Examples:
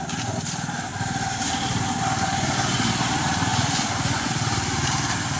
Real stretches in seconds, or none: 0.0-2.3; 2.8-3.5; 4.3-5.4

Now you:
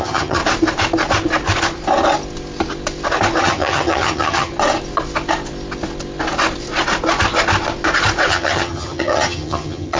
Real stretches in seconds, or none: 0.4-3.4; 4.5-8.3

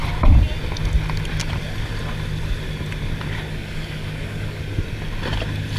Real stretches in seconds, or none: 0.0-3.5; 4.6-5.8

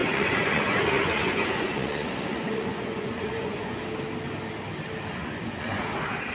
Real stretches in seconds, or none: 3.8-5.1; 5.8-6.3

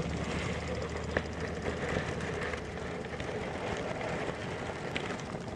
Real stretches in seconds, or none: 0.0-5.6